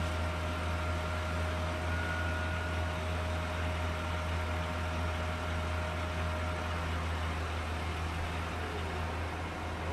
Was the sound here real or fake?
real